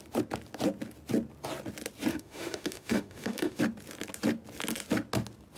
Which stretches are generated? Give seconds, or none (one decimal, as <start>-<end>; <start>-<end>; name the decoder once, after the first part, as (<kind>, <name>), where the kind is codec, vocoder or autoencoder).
2.1-3.6 (autoencoder, DAC-VAE)